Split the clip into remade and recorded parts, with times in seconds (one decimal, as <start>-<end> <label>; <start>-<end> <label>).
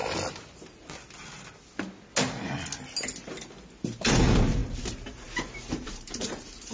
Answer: 0.0-4.0 recorded; 4.0-6.7 remade